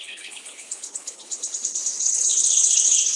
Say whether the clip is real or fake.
fake